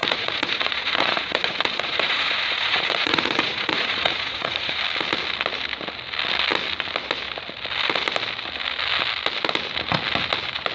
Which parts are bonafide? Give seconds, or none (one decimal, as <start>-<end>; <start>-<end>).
4.8-10.7